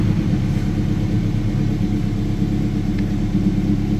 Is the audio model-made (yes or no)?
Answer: no